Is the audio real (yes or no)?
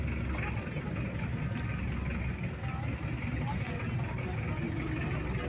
yes